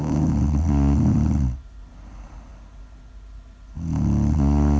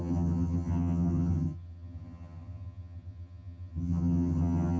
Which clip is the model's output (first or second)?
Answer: second